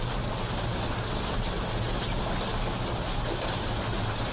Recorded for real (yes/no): yes